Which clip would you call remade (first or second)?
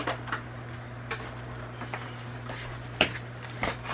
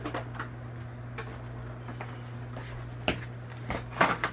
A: first